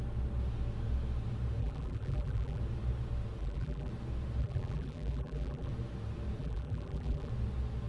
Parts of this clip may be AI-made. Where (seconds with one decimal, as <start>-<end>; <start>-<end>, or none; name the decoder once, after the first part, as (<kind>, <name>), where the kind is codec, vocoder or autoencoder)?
1.6-2.6 (vocoder, BigVGAN v2); 3.4-3.9; 4.4-5.7; 6.4-7.3